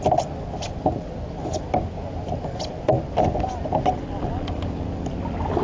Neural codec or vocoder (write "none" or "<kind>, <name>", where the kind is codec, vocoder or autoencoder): none